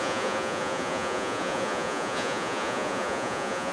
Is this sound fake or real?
fake